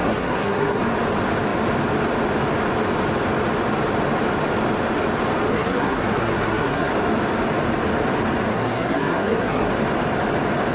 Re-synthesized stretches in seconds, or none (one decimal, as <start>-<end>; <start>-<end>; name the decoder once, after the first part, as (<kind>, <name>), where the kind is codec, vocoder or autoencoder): 0.0-0.8 (codec, SNAC); 5.5-6.9; 8.5-9.7